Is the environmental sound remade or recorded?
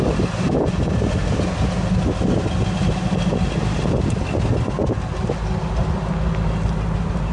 recorded